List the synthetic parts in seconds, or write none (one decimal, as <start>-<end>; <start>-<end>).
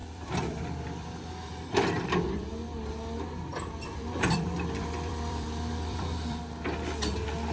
0.0-2.5; 3.5-6.4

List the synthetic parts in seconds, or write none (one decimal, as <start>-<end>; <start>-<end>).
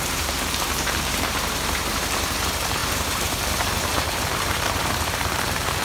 0.0-5.8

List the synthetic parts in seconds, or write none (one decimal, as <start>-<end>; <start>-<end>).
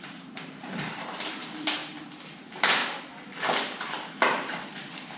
0.0-2.8; 3.8-5.2